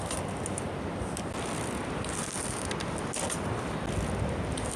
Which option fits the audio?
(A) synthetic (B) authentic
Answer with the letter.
B